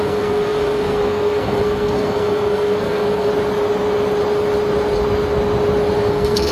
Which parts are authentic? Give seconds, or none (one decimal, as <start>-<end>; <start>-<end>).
3.3-6.1